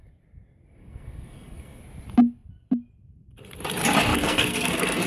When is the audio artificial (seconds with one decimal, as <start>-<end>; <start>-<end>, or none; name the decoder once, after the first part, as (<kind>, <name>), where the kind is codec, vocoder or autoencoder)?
0.8-1.8 (codec, SNAC); 4.1-5.1